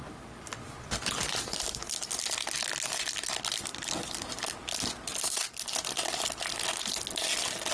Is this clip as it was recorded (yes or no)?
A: yes